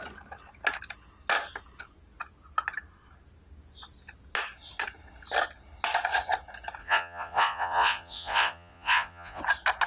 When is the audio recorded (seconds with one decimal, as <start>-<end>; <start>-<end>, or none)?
0.0-6.8; 9.4-9.9